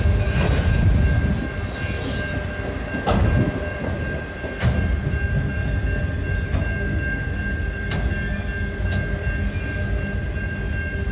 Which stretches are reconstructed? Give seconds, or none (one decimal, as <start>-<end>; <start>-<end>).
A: none